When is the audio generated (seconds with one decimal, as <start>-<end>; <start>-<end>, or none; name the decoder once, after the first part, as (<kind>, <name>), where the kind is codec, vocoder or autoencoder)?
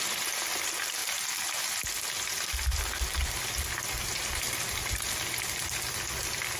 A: none